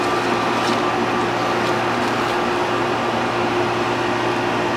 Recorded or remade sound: recorded